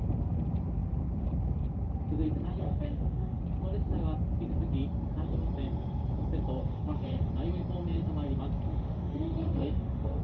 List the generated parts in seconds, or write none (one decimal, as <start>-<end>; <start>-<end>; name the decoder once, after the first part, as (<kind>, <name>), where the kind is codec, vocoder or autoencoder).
2.6-3.4 (autoencoder, DAC-VAE); 6.6-7.3; 8.7-10.2